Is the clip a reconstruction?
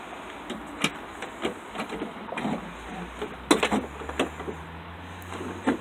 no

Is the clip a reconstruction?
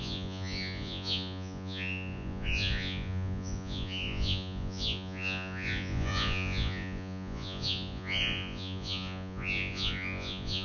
yes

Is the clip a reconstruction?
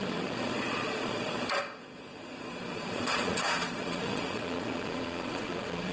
yes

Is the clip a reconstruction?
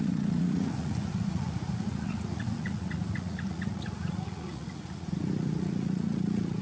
yes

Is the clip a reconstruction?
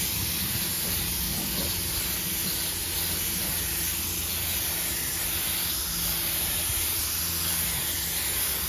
no